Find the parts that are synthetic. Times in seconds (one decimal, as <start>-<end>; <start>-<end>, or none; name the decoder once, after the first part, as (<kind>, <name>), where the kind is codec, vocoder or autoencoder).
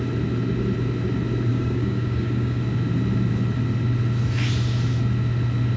1.5-2.6 (codec, DAC)